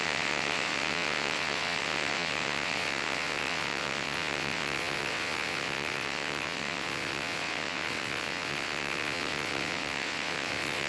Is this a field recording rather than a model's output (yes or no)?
no